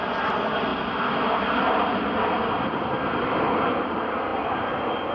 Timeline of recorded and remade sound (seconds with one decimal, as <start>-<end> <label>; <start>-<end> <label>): 0.0-5.1 recorded